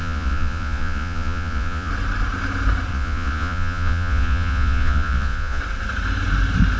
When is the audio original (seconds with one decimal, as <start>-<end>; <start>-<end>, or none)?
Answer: 1.9-2.9; 5.6-6.8